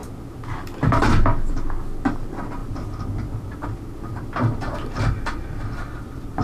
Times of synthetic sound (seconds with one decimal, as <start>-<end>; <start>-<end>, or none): none